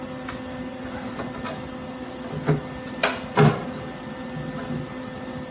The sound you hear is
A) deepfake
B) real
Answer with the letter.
B